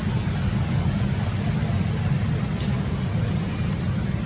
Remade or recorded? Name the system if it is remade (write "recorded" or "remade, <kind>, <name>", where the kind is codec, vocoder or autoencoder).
recorded